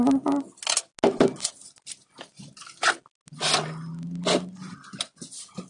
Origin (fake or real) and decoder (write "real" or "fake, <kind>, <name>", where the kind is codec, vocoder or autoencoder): real